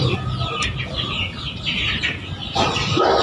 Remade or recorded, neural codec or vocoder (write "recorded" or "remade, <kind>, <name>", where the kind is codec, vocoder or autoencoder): recorded